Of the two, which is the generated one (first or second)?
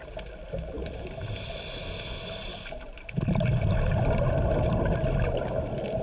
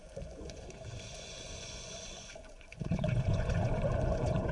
second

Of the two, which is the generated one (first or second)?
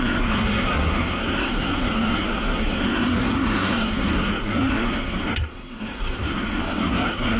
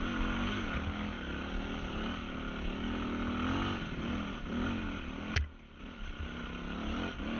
first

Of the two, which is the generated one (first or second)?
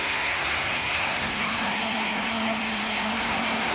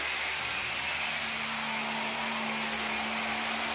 first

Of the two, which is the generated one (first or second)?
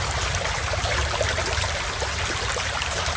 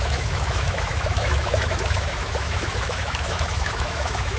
second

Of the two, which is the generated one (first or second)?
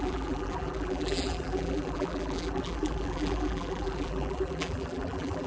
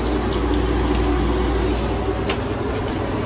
first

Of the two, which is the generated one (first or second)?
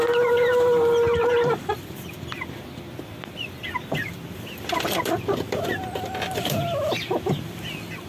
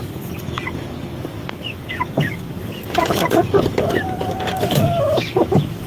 second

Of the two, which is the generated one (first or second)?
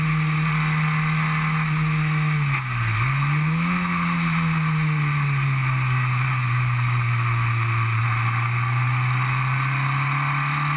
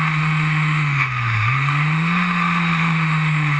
second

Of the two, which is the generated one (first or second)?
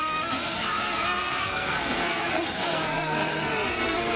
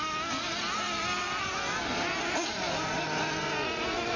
first